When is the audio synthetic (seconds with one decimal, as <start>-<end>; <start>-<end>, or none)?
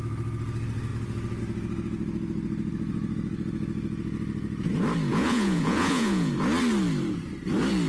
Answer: 5.1-6.3